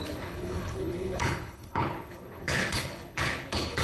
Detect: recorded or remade remade